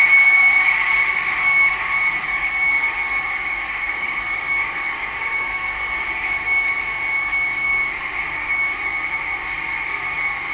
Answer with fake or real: fake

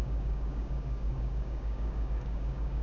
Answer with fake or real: fake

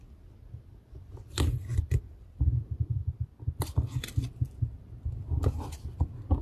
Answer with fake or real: real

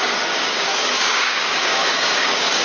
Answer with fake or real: fake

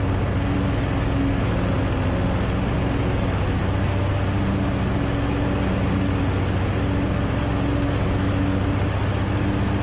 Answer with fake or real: real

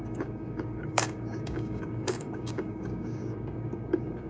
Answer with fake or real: fake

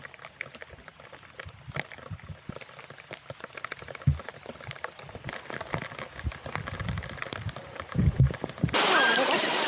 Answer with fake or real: real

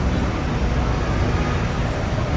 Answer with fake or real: real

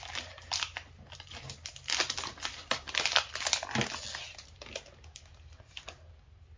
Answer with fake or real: real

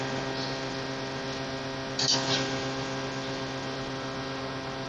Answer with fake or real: real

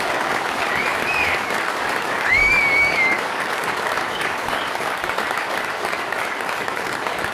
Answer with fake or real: fake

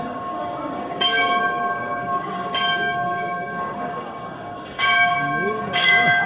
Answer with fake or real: fake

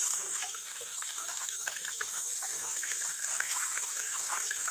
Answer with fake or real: fake